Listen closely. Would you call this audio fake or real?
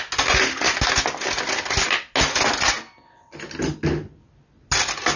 real